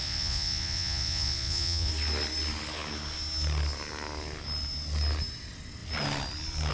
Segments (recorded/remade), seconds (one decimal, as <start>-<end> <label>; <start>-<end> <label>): 0.0-1.9 remade; 1.9-6.7 recorded